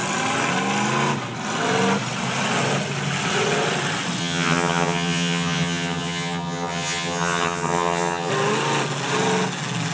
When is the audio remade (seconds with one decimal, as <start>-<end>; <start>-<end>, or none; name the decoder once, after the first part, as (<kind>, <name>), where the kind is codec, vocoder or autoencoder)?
4.2-8.3 (vocoder, HiFi-GAN)